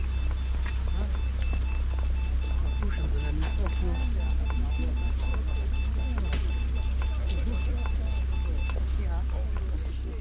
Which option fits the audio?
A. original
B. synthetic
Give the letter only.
A